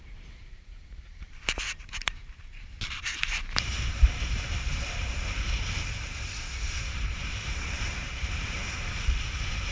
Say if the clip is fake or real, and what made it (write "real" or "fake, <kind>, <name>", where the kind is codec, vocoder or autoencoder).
fake, vocoder, BigVGAN v2